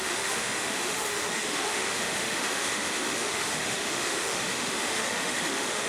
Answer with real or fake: fake